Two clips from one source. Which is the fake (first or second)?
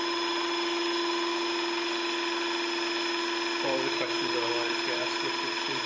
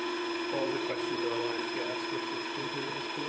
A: second